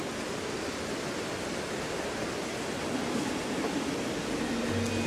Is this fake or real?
real